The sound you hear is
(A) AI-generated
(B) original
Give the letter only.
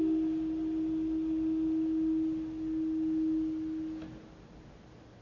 B